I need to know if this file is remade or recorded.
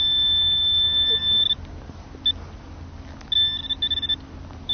recorded